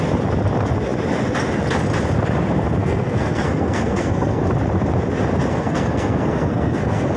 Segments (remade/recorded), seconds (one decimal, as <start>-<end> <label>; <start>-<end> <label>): 0.0-2.8 recorded; 2.8-4.5 remade; 4.5-5.5 recorded; 5.5-7.2 remade